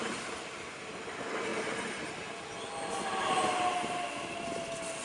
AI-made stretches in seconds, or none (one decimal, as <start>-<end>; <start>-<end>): none